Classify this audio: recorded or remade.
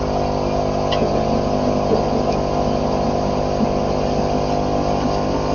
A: recorded